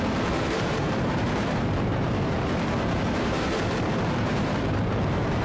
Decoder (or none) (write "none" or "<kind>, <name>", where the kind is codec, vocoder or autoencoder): vocoder, BigVGAN v2